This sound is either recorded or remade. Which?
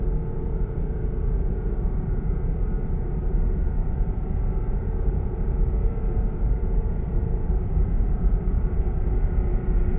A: remade